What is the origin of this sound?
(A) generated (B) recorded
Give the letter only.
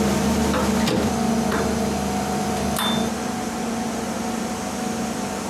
B